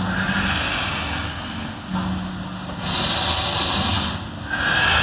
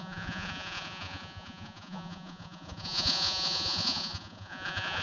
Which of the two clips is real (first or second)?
first